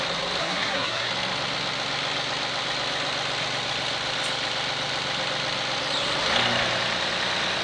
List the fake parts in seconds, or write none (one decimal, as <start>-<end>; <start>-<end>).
0.4-1.1